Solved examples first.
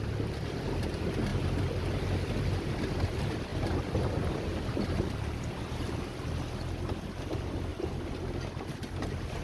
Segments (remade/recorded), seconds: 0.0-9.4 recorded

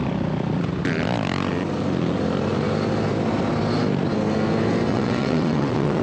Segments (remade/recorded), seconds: 0.0-4.9 recorded; 4.9-6.0 remade

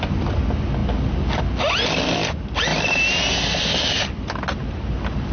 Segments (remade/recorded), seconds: 0.0-5.3 recorded

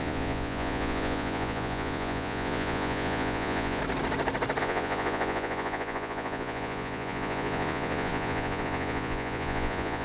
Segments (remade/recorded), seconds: 0.0-3.8 remade; 3.8-4.6 recorded; 4.6-10.0 remade

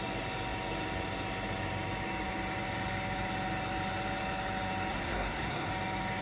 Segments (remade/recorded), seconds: 0.0-4.9 recorded; 4.9-5.7 remade; 5.7-6.2 recorded

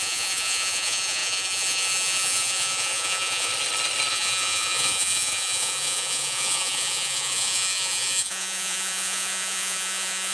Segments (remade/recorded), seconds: 0.0-3.5 remade; 3.5-4.1 recorded; 4.1-10.3 remade